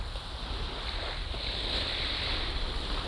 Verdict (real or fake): real